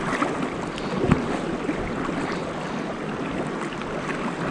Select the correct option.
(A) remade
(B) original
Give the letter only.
B